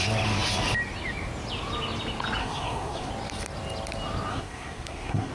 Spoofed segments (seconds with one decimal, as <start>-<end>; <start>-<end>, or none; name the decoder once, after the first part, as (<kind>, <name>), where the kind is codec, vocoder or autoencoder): 2.4-3.1 (codec, SNAC); 4.3-5.3